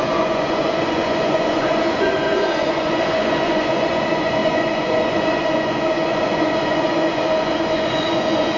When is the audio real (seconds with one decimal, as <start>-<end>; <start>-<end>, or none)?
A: none